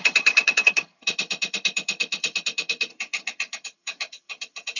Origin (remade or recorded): remade